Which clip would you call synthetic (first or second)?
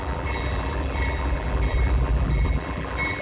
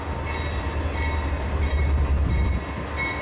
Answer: first